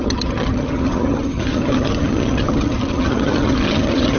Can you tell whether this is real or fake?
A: fake